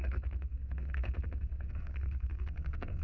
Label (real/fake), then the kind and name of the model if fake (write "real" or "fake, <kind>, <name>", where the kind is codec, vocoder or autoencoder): fake, codec, SNAC